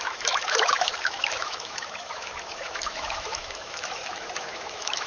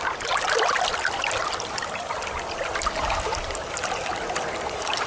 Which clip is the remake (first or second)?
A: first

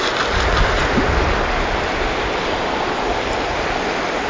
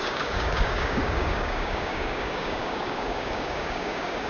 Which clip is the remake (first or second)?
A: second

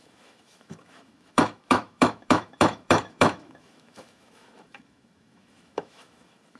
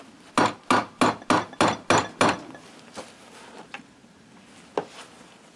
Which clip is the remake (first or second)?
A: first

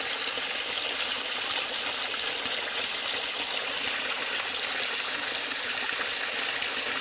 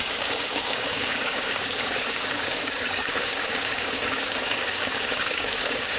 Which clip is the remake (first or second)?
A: second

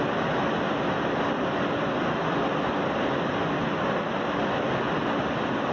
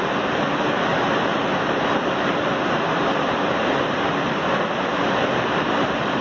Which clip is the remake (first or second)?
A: second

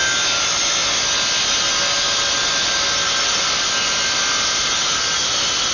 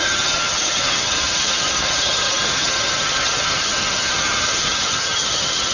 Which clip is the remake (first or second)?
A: second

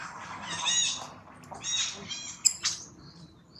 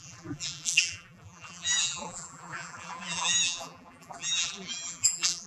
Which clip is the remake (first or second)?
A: second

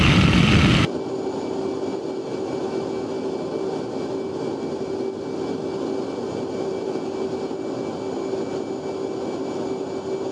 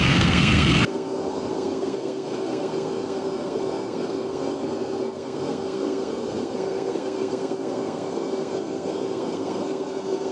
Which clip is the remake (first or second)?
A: second